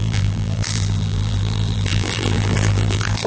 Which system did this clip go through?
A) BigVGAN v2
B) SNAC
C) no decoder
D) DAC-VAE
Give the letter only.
A